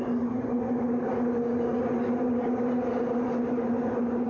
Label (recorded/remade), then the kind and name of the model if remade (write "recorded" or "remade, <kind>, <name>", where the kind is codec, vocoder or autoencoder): recorded